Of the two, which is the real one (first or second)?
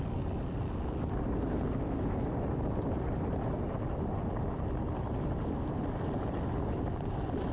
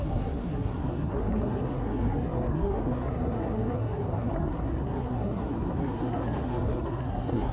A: first